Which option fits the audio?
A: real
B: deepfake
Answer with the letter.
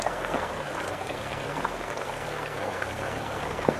B